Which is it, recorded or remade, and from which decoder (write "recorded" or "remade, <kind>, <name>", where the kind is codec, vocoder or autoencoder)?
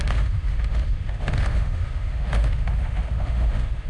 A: remade, autoencoder, DAC-VAE